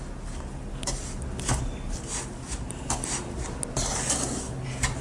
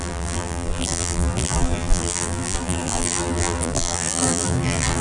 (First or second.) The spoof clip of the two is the second